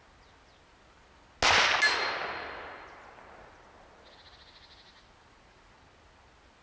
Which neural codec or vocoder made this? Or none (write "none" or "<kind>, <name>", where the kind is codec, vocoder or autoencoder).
none